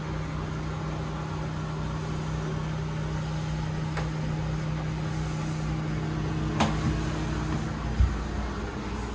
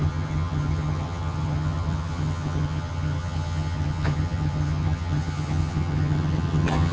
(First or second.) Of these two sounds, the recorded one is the first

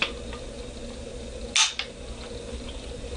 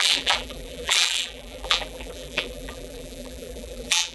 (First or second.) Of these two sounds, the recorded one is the first